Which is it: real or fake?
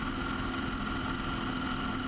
real